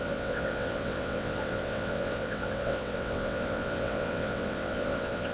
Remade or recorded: remade